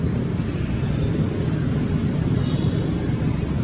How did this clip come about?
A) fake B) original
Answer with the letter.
B